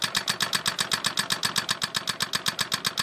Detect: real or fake real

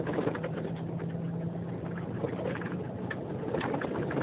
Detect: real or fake real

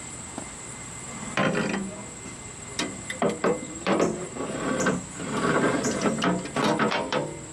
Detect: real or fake fake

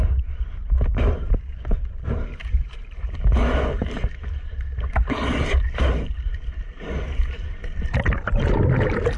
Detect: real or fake fake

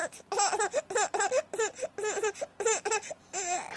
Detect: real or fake real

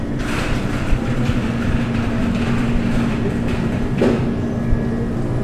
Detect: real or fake fake